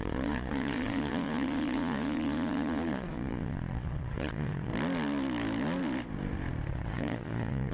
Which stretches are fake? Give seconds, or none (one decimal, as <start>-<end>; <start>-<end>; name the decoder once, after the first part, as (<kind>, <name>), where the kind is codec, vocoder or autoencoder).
0.0-4.7 (vocoder, Vocos); 6.7-7.7